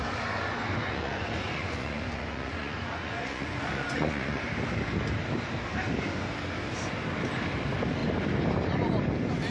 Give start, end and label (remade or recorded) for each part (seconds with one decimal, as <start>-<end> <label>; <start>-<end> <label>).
0.0-0.8 recorded; 0.8-4.4 remade; 4.4-9.5 recorded